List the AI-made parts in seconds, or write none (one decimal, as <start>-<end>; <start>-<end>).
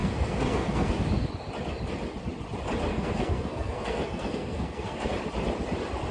0.0-0.9; 2.9-5.1